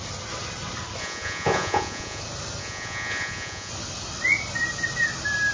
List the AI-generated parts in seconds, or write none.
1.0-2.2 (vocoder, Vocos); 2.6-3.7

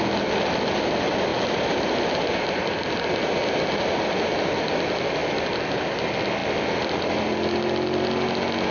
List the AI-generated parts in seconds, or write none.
none

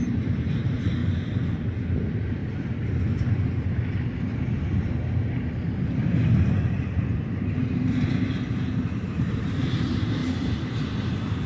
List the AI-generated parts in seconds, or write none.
0.0-1.0 (vocoder, BigVGAN v2); 2.0-2.4; 6.8-11.5

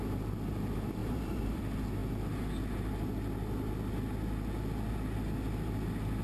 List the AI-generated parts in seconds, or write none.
1.0-1.6 (vocoder, BigVGAN v2)

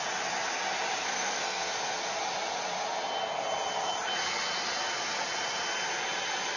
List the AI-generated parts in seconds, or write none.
1.0-1.7 (codec, SNAC)

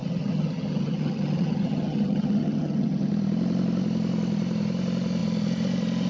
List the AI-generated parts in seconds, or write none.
0.0-3.1 (vocoder, HiFi-GAN)

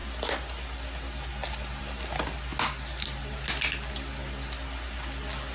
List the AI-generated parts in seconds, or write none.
none

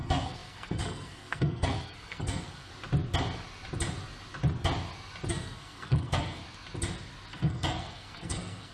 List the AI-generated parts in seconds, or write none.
0.0-2.7 (codec, SNAC); 5.3-6.4; 7.3-8.7